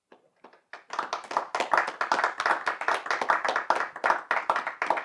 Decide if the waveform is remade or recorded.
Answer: recorded